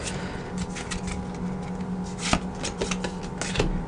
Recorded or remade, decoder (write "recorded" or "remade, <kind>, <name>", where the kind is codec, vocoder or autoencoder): recorded